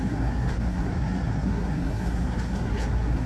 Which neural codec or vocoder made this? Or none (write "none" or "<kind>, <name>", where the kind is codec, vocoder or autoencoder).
codec, SNAC